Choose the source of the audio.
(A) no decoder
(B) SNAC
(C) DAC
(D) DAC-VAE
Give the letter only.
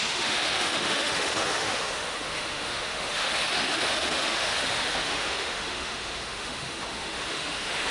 D